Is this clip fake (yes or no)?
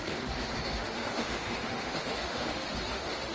yes